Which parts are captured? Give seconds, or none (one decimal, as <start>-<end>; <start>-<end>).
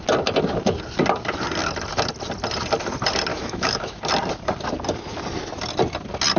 0.0-3.3; 4.0-6.4